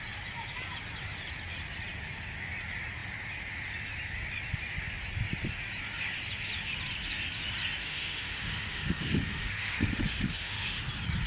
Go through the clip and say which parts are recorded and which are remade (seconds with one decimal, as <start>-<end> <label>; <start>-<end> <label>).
0.0-7.8 recorded; 7.8-10.8 remade; 10.8-11.3 recorded